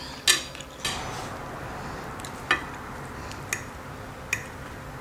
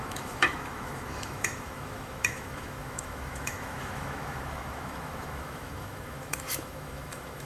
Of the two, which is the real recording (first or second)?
first